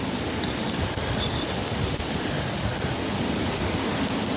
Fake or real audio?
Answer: real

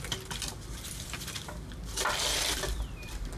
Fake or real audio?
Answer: fake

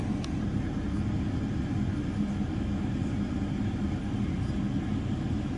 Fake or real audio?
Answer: real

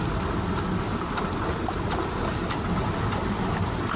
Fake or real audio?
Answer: real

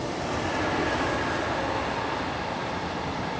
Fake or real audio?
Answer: real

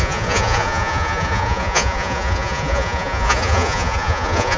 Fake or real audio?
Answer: fake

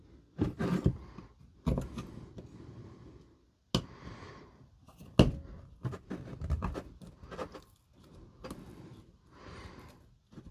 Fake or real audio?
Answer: real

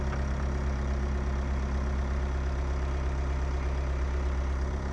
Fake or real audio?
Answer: fake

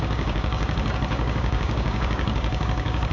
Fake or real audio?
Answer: fake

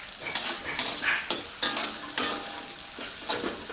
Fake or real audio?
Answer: real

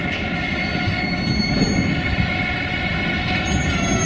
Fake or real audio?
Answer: real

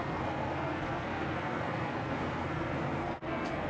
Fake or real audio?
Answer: fake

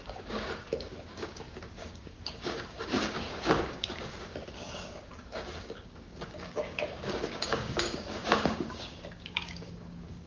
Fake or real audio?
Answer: fake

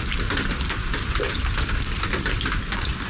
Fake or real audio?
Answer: real